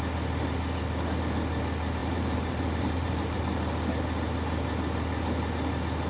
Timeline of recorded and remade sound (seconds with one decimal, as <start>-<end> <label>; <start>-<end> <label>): 0.0-2.0 recorded; 2.0-3.4 remade; 3.4-6.1 recorded